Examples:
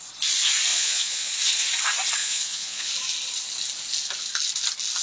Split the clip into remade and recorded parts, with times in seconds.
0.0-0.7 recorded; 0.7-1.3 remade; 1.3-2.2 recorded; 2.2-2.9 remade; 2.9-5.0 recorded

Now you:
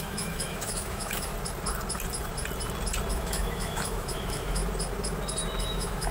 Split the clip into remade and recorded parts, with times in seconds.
0.0-1.3 remade; 1.3-3.1 recorded; 3.1-4.6 remade; 4.6-5.6 recorded; 5.6-6.1 remade